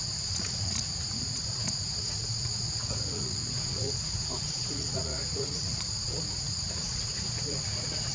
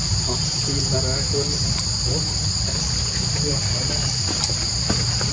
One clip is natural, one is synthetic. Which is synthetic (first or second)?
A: first